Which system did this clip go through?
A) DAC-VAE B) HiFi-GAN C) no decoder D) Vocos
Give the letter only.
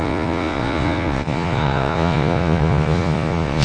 D